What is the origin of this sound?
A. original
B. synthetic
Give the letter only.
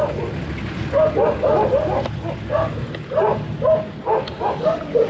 A